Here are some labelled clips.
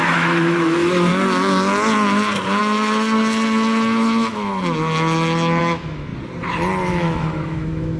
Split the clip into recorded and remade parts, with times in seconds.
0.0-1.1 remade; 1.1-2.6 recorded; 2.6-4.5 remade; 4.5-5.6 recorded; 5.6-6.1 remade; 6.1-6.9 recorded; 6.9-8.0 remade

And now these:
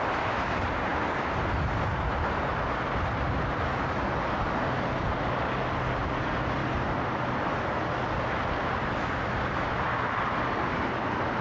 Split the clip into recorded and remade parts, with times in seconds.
0.0-11.4 recorded

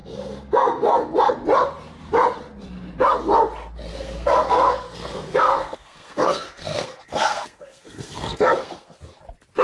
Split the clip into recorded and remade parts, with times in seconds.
0.0-1.3 remade; 1.3-3.9 recorded; 3.9-9.0 remade; 9.0-9.6 recorded

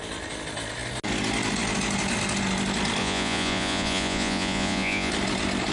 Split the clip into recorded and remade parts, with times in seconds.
0.0-3.0 recorded; 3.0-5.1 remade; 5.1-5.7 recorded

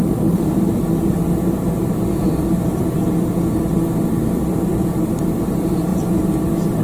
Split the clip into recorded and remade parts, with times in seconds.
0.0-3.7 remade; 3.7-4.3 recorded; 4.3-5.9 remade; 5.9-6.8 recorded

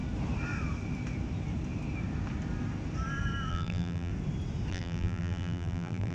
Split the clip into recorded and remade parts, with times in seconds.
0.0-3.5 recorded; 3.5-4.1 remade; 4.1-4.7 recorded; 4.7-6.1 remade

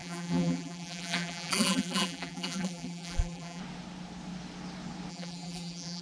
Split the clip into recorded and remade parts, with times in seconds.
0.0-3.6 remade; 3.6-5.1 recorded; 5.1-6.0 remade